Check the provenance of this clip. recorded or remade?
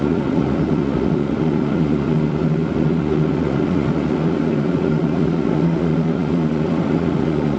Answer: remade